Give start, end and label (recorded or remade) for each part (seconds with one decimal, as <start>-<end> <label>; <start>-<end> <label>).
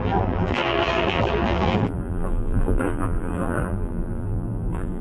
0.0-5.0 remade